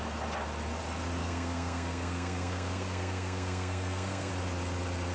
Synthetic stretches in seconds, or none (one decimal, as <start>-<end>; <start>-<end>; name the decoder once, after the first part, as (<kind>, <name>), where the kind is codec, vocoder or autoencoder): 1.2-4.3 (codec, SNAC)